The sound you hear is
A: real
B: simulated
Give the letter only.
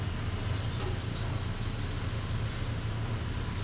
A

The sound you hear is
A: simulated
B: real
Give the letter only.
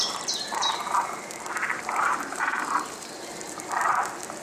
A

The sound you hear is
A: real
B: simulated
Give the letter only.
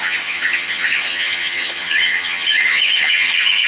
B